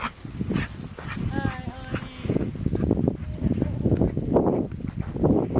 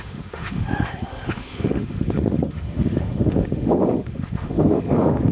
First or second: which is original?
first